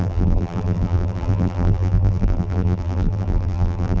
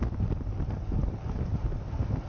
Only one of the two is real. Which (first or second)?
second